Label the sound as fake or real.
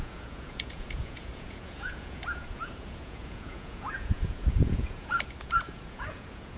fake